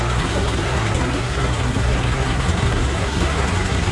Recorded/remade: remade